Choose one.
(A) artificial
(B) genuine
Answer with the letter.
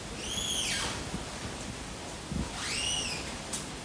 B